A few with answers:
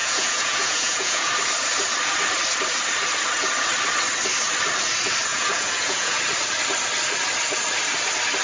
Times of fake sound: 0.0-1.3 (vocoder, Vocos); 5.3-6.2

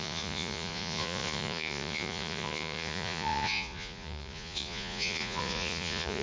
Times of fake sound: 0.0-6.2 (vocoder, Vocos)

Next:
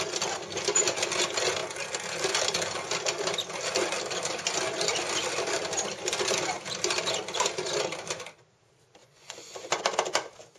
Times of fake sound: 9.0-9.8 (vocoder, Vocos)

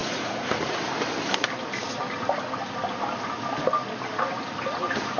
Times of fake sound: 0.0-0.8 (vocoder, Vocos)

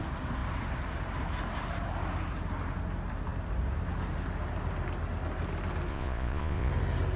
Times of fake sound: 5.9-6.7 (vocoder, Vocos)